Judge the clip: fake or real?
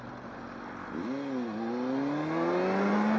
real